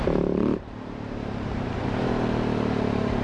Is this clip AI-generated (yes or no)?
yes